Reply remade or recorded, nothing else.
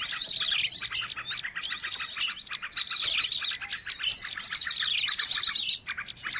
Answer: recorded